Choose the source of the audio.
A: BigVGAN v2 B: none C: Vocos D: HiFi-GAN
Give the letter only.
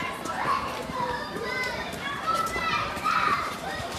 A